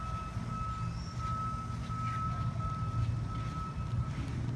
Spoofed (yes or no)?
no